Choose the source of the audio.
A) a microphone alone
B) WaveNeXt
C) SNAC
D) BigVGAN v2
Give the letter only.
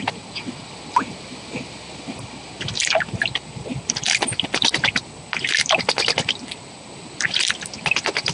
A